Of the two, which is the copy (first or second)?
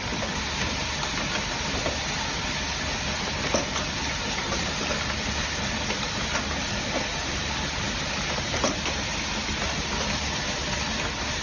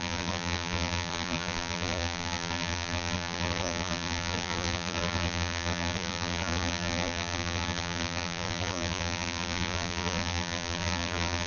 second